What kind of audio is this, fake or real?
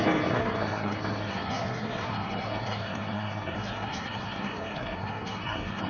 fake